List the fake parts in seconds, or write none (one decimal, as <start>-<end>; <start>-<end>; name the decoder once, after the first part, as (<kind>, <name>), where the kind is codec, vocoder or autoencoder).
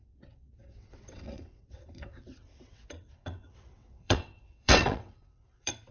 0.0-5.9 (vocoder, WaveNeXt)